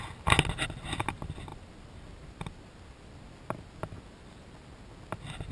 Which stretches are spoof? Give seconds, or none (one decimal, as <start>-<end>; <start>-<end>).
none